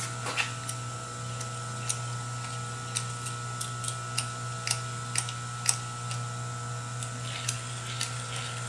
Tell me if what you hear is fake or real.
real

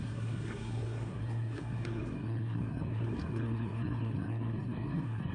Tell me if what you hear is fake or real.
fake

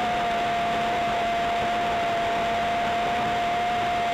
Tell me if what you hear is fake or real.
real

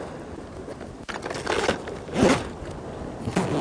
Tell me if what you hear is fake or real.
real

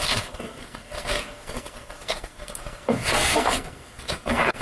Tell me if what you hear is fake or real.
fake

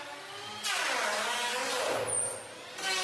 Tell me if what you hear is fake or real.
real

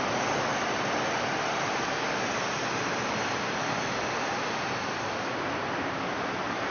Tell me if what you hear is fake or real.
real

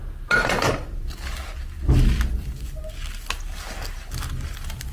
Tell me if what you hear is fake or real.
real